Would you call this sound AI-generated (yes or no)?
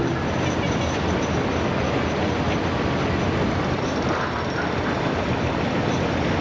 no